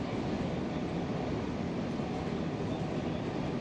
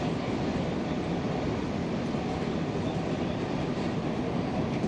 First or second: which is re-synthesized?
second